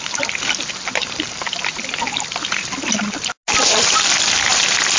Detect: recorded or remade recorded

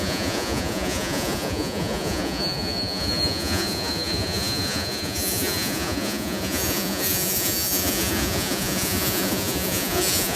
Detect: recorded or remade remade